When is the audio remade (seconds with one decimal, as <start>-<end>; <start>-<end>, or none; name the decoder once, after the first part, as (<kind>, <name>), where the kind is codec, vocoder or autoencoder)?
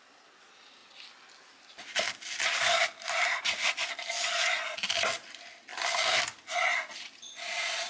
none